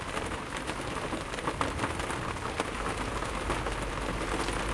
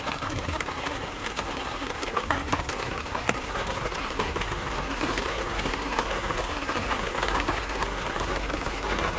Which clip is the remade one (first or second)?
second